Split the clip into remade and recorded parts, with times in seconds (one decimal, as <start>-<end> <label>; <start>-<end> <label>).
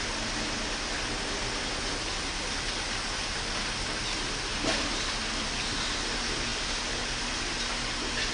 0.0-8.3 recorded